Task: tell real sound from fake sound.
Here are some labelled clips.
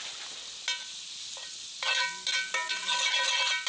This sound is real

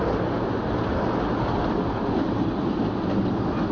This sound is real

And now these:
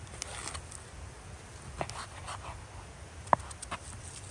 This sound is real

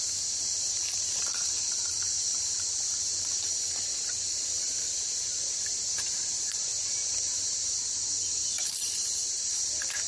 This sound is fake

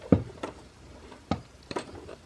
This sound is fake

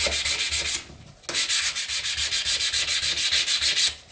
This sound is real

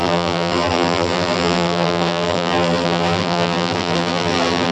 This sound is fake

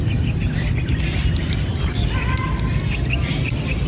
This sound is real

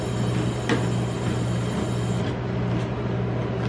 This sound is real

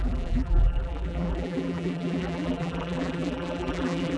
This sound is fake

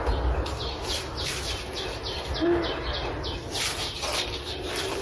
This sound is real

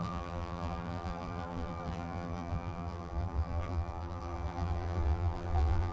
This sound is fake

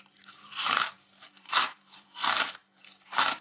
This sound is fake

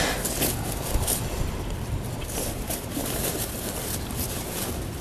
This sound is real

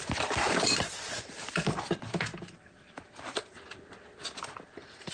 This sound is real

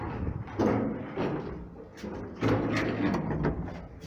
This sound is real